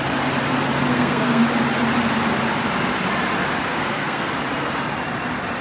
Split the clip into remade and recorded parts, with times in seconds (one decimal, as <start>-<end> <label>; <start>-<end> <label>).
0.0-0.9 recorded; 0.9-1.4 remade; 1.4-3.7 recorded; 3.7-4.3 remade; 4.3-5.6 recorded